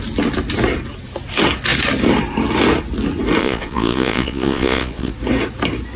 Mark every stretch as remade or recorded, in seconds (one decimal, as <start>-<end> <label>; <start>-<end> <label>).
0.0-3.4 recorded; 3.4-5.1 remade; 5.1-6.0 recorded